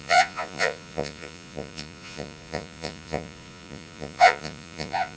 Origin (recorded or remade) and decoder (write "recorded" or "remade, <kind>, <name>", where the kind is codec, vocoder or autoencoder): remade, vocoder, Vocos